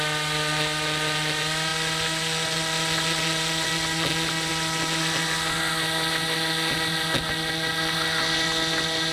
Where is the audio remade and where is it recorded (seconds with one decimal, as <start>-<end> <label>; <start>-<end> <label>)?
0.0-9.1 recorded